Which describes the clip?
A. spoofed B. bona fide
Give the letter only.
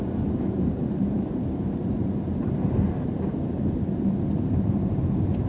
A